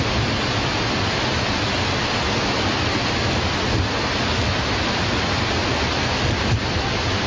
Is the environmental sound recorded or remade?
recorded